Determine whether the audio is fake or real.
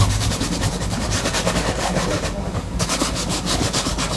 fake